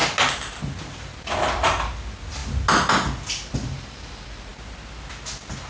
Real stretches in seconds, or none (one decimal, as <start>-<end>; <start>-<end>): 0.0-5.7